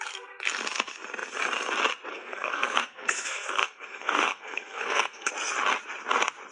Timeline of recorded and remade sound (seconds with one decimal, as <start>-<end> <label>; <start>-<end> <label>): 0.0-2.1 recorded; 2.1-5.3 remade; 5.3-6.5 recorded